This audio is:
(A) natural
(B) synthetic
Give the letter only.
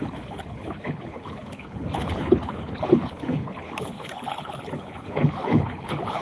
B